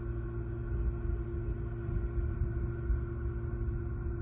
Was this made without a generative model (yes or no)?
yes